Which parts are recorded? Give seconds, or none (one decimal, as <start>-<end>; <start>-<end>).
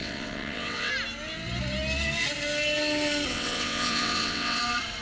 0.9-3.3; 4.6-5.0